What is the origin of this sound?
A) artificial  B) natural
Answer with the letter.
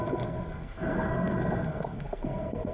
A